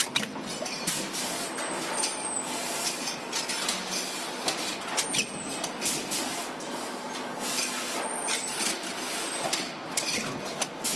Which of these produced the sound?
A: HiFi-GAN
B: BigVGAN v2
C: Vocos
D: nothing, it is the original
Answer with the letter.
D